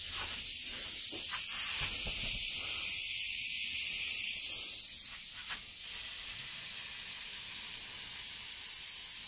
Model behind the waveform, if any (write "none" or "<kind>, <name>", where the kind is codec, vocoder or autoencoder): none